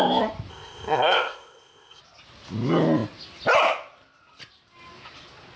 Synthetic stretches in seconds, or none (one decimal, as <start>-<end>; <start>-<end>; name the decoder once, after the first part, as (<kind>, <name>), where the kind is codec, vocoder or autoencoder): 0.5-2.0 (codec, ZipCodec)